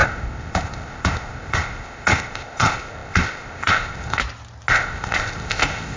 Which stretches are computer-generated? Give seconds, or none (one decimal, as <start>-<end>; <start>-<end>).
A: 0.0-4.2; 4.7-6.0